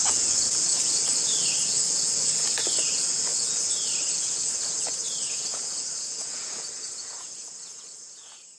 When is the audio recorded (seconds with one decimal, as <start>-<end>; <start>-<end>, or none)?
none